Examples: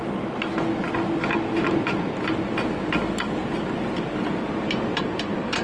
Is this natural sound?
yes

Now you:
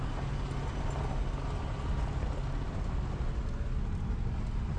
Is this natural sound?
yes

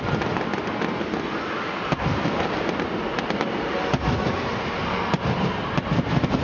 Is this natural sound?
yes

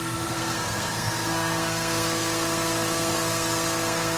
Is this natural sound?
no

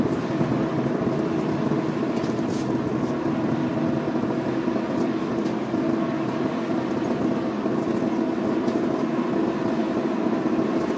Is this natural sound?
yes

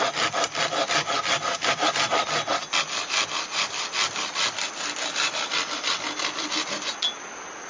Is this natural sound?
yes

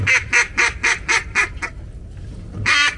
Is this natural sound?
yes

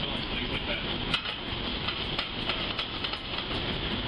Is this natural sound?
yes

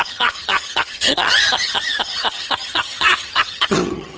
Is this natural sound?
no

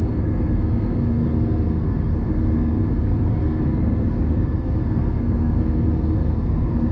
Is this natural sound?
no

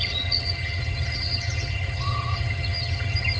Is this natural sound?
no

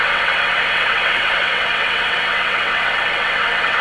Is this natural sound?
no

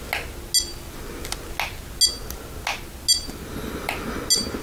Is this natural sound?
yes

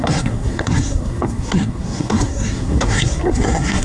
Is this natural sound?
no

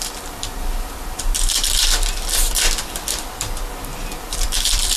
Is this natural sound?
no